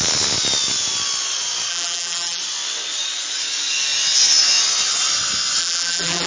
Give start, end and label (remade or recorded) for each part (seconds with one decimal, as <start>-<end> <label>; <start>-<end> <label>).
0.0-1.7 recorded; 1.7-2.4 remade; 2.4-5.6 recorded; 5.6-6.3 remade